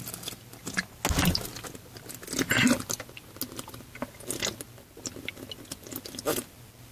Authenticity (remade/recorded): recorded